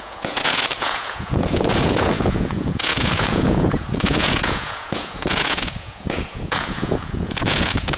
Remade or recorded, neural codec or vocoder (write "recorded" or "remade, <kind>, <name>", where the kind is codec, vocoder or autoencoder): remade, vocoder, Vocos